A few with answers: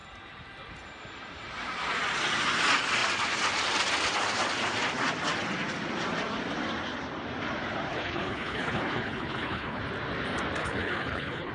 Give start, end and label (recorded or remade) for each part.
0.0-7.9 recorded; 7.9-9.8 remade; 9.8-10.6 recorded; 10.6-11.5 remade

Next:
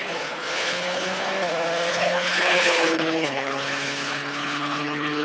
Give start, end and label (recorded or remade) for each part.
0.0-1.3 remade; 1.3-1.9 recorded; 1.9-5.2 remade

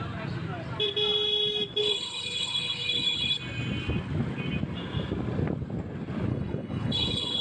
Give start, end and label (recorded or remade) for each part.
0.0-1.8 recorded; 1.8-3.4 remade; 3.4-6.3 recorded; 6.3-7.4 remade

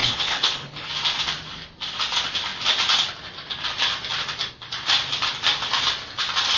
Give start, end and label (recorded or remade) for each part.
0.0-0.9 remade; 0.9-6.6 recorded

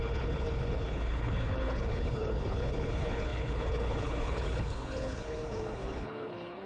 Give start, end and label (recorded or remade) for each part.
0.0-6.7 remade